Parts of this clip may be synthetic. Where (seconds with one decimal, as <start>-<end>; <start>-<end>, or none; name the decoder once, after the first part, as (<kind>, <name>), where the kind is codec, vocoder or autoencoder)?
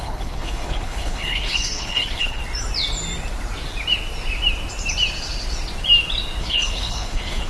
0.0-2.4 (codec, HILCodec); 6.4-7.5